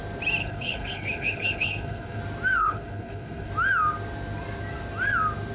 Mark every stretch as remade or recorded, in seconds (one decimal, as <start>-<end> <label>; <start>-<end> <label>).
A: 0.0-0.4 recorded; 0.4-2.2 remade; 2.2-2.6 recorded; 2.6-3.5 remade; 3.5-5.5 recorded